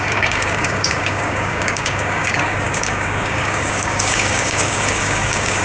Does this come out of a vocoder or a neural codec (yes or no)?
yes